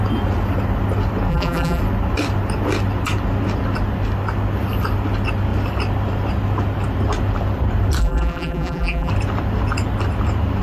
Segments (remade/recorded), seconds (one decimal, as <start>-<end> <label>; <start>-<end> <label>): 0.0-1.3 recorded; 1.3-1.8 remade; 1.8-8.0 recorded; 8.0-9.1 remade; 9.1-10.6 recorded